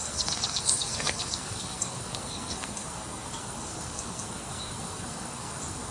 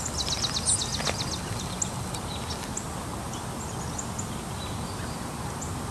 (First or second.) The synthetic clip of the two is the first